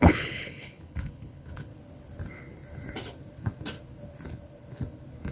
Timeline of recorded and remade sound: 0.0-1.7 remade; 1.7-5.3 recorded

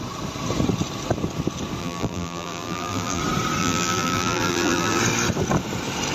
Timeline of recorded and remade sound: 0.0-1.8 recorded; 1.8-3.2 remade; 3.2-3.6 recorded; 3.6-5.0 remade; 5.0-6.1 recorded

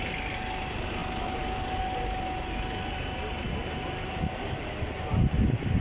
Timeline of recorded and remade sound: 0.0-5.8 recorded

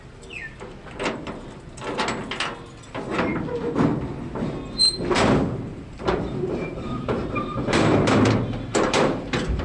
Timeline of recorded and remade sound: 0.0-5.7 recorded; 5.7-9.6 remade

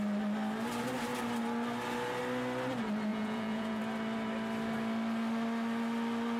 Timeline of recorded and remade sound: 0.0-3.1 recorded; 3.1-3.8 remade; 3.8-6.4 recorded

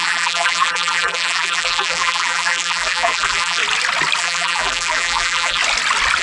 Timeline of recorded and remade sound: 0.0-3.6 remade; 3.6-4.2 recorded; 4.2-5.6 remade; 5.6-6.2 recorded

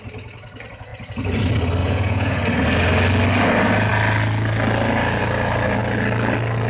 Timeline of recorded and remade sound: 0.0-1.8 recorded; 1.8-2.4 remade; 2.4-6.7 recorded

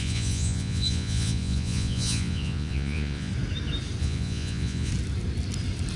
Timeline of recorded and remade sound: 0.0-3.3 remade; 3.3-4.0 recorded; 4.0-4.9 remade; 4.9-6.0 recorded